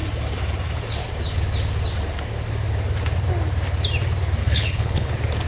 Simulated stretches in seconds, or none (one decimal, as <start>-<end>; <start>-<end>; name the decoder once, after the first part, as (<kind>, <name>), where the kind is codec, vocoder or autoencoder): 4.4-5.1 (codec, HILCodec)